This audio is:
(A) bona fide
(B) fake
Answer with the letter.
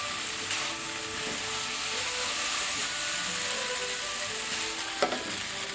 A